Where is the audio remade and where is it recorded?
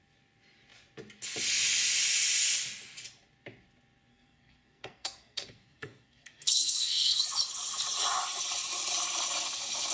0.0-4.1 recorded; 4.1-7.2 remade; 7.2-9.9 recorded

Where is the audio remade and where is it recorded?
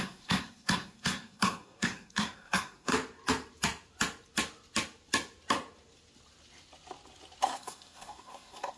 0.0-2.9 remade; 2.9-7.4 recorded; 7.4-8.8 remade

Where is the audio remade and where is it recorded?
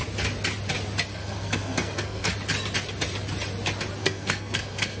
0.0-1.1 recorded; 1.1-2.3 remade; 2.3-4.0 recorded; 4.0-5.0 remade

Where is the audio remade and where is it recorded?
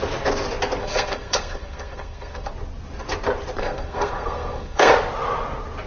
0.0-0.8 recorded; 0.8-2.5 remade; 2.5-3.6 recorded; 3.6-4.9 remade; 4.9-5.9 recorded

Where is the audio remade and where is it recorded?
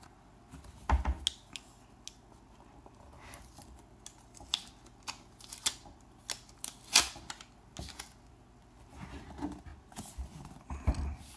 0.0-11.4 recorded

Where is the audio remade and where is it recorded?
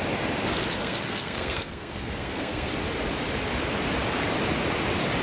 0.0-0.8 recorded; 0.8-2.7 remade; 2.7-5.2 recorded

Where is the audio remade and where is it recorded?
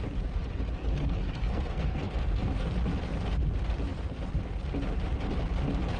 0.0-0.8 recorded; 0.8-2.7 remade; 2.7-6.0 recorded